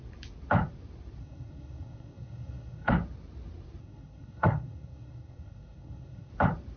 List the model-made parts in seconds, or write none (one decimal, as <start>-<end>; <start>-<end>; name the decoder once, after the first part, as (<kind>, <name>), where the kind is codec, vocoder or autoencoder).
1.2-2.9 (codec, SNAC); 3.8-6.3